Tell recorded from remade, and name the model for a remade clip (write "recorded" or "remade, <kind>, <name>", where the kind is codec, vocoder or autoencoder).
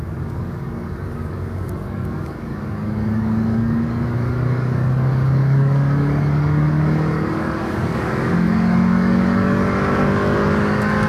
remade, codec, DAC